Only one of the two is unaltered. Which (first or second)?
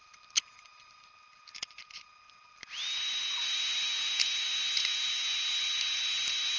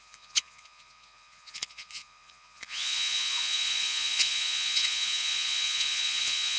first